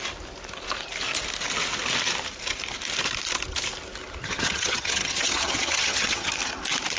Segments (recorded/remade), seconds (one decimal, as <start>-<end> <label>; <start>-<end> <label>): 0.0-4.2 recorded; 4.2-6.3 remade; 6.3-7.0 recorded